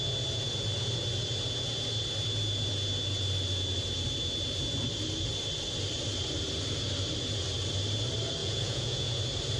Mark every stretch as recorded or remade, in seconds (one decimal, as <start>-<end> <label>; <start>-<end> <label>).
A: 0.0-8.4 recorded; 8.4-9.2 remade; 9.2-9.6 recorded